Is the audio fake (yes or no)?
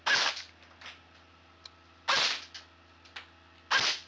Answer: no